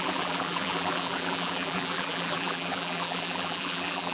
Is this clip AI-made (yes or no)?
yes